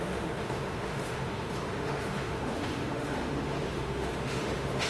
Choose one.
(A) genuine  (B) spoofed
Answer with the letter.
B